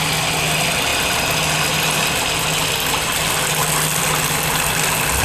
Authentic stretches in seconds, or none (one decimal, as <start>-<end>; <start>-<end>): 0.0-5.2